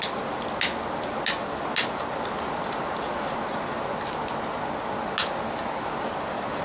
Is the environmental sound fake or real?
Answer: real